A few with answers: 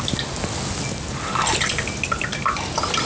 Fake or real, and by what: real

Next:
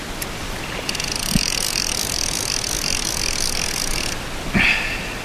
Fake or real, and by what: real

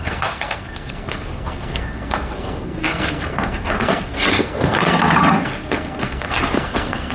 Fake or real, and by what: fake, codec, SNAC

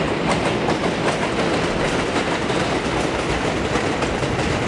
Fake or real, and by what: real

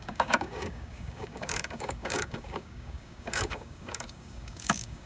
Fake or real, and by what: fake, codec, DAC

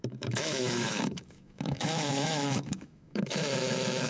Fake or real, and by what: fake, autoencoder, DAC-VAE